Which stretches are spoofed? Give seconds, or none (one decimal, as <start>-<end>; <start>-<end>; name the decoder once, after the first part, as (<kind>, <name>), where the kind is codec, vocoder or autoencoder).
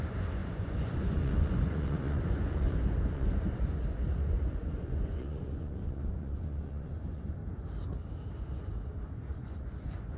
0.0-7.4 (vocoder, Vocos); 8.4-10.2